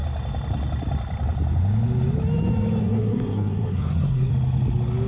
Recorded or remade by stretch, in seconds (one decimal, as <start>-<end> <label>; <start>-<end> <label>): 0.0-2.8 recorded; 2.8-4.3 remade; 4.3-5.1 recorded